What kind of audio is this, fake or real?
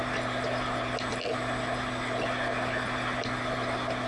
real